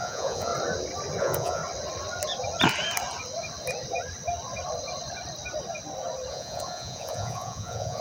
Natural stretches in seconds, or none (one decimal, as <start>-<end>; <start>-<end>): 0.5-1.2; 1.6-6.3